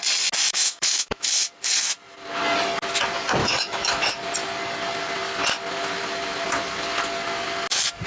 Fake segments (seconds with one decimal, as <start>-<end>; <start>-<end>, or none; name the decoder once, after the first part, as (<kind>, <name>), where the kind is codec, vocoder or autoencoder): 0.5-1.3 (autoencoder, DAC-VAE); 3.4-4.1